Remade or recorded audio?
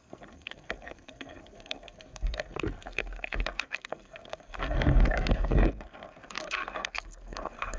remade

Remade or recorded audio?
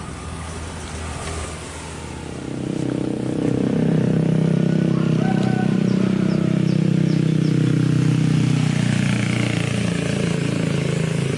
recorded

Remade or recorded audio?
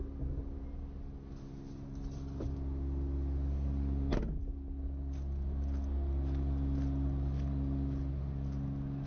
recorded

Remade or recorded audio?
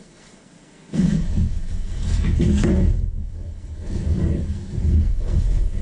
remade